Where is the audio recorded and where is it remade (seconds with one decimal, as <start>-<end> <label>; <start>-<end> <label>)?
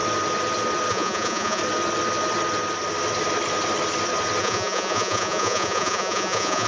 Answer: 0.0-0.9 recorded; 0.9-1.6 remade; 1.6-4.4 recorded; 4.4-6.7 remade